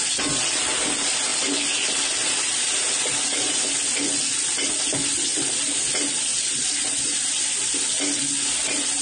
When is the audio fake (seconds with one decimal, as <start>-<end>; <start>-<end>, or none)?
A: none